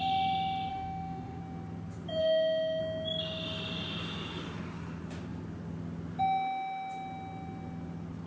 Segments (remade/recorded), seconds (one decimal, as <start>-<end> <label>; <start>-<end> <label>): 0.0-0.7 recorded; 0.7-1.4 remade; 1.4-2.2 recorded; 2.2-2.8 remade; 2.8-8.3 recorded